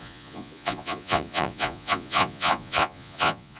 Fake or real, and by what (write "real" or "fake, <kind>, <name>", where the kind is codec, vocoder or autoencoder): fake, vocoder, Vocos